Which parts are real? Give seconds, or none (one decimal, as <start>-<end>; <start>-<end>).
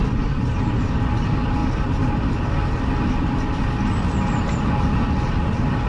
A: 0.0-5.9